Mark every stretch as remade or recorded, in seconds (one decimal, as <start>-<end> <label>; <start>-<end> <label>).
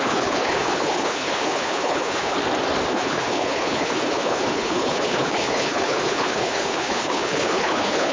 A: 0.0-2.4 remade; 2.4-2.9 recorded; 2.9-8.1 remade